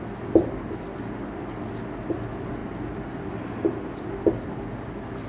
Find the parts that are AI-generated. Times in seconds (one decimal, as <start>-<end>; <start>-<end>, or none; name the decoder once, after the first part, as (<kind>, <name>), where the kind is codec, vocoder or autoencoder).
none